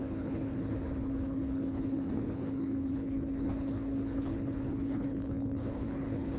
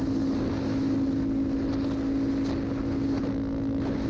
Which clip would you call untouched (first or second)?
second